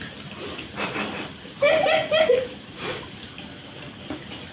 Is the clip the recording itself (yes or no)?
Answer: yes